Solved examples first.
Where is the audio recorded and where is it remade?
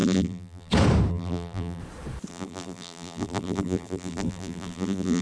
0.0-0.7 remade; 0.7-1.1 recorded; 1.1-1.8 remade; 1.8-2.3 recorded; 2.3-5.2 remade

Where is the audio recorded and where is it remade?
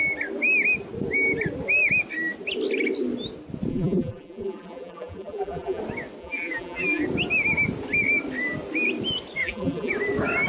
0.0-3.7 recorded; 3.7-5.8 remade; 5.8-6.2 recorded; 6.2-7.0 remade; 7.0-9.4 recorded; 9.4-9.9 remade; 9.9-10.5 recorded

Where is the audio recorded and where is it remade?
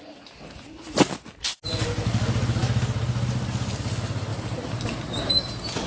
0.0-4.3 recorded; 4.3-5.3 remade; 5.3-5.9 recorded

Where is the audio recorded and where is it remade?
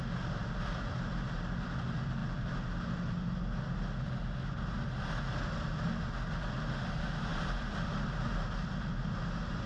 0.0-9.7 recorded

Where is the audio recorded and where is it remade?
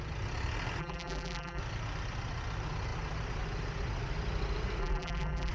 0.0-0.8 recorded; 0.8-1.6 remade; 1.6-4.8 recorded; 4.8-5.5 remade